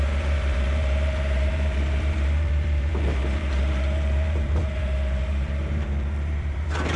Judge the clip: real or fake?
fake